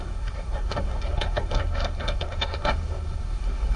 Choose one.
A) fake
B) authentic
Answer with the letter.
A